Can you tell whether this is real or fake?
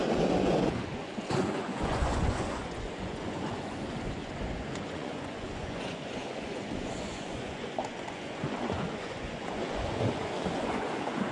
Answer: fake